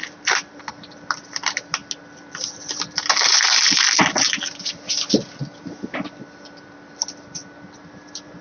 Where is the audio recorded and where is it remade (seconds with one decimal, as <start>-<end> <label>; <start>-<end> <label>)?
0.0-8.4 recorded